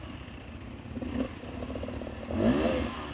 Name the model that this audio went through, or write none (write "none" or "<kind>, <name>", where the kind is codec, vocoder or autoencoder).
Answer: none